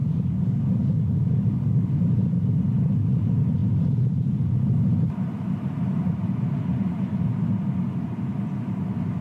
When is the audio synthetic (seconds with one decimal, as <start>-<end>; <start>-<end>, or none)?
0.0-2.0